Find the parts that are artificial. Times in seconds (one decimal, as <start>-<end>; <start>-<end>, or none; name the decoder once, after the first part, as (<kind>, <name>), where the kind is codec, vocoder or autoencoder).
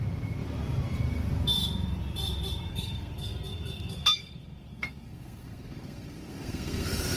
2.7-7.2 (codec, SNAC)